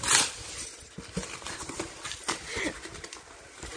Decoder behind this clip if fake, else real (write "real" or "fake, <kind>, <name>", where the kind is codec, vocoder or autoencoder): real